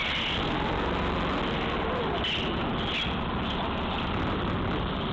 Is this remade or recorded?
recorded